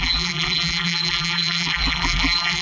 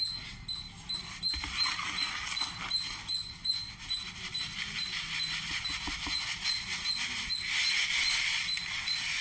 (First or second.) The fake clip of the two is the first